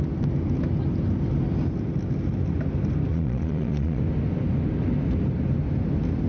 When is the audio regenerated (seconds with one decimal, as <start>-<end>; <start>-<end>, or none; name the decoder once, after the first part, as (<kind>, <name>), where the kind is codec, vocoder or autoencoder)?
3.1-4.0 (vocoder, Vocos)